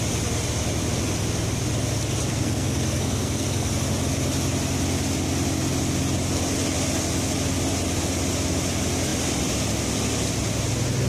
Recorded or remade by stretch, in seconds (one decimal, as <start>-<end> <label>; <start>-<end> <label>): 0.0-2.3 recorded; 2.3-3.7 remade; 3.7-11.1 recorded